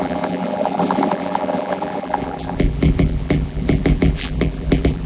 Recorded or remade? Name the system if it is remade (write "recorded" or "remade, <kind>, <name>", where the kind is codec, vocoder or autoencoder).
remade, vocoder, BigVGAN v2